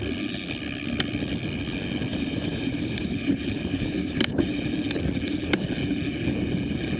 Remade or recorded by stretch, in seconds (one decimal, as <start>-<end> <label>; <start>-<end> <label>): 0.0-2.1 recorded; 2.1-4.6 remade; 4.6-7.0 recorded